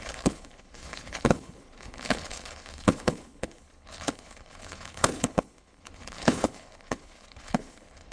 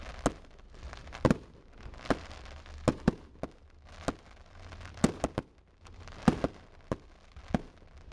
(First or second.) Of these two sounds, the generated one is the first